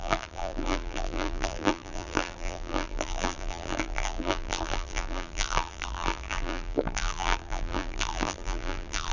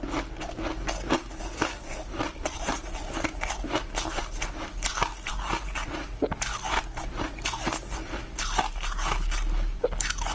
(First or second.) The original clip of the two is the second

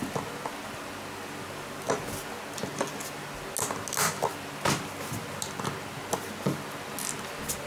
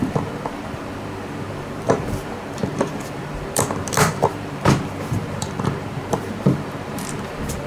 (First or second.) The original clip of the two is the first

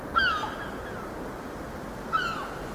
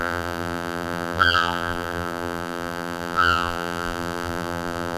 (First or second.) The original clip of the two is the first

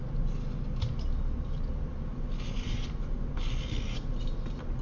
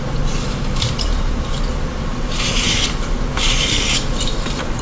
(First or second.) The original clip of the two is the first